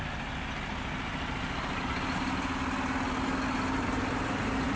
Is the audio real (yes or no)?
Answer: yes